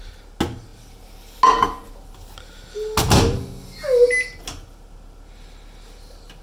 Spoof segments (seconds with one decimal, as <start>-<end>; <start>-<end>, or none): none